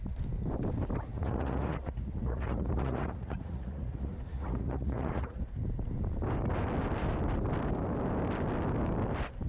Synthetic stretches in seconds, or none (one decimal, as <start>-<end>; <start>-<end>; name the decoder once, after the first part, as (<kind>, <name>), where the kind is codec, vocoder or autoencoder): 1.1-5.4 (vocoder, Vocos)

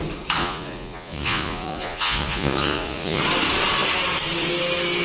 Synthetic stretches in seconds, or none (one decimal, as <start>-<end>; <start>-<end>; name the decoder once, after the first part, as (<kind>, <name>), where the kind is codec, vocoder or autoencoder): 0.4-3.2 (vocoder, Vocos)

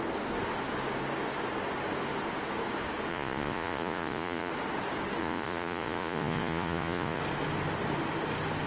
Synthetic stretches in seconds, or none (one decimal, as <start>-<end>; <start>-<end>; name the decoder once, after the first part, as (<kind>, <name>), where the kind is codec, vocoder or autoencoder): 3.1-4.5 (vocoder, Vocos); 5.2-7.2

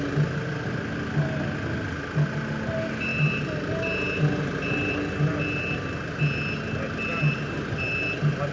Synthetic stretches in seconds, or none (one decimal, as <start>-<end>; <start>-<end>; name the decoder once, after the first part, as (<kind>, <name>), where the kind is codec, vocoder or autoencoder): none

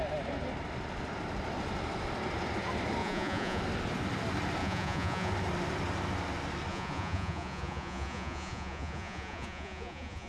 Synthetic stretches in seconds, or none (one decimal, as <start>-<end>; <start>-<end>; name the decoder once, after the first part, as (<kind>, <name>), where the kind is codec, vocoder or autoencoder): 3.0-3.6 (vocoder, Vocos); 4.6-5.3; 6.7-10.3

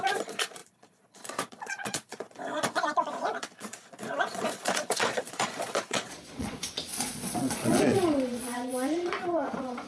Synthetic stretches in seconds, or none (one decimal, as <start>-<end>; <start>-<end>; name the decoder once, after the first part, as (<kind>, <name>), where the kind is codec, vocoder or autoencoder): 0.0-9.9 (vocoder, Vocos)

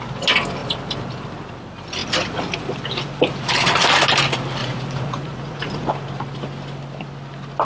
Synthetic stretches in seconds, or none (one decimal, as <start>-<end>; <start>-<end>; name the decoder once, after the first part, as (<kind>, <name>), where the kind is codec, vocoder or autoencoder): 4.6-5.9 (vocoder, Vocos)